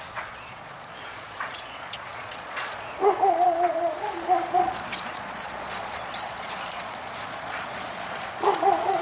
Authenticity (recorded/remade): remade